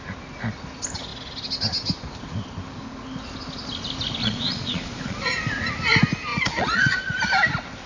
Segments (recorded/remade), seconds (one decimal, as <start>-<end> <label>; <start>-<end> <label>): 0.0-4.2 recorded; 4.2-5.3 remade; 5.3-6.3 recorded; 6.3-7.0 remade; 7.0-7.9 recorded